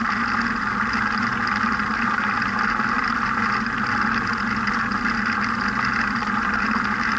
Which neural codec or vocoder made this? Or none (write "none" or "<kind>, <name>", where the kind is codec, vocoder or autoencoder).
none